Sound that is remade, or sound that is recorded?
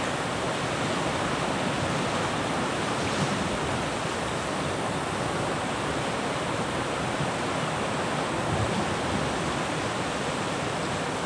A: recorded